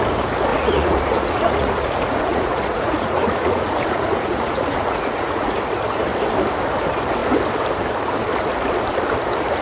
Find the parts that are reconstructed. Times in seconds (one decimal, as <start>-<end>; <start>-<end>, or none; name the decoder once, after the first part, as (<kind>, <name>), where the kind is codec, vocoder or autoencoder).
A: 0.5-5.6 (vocoder, Vocos)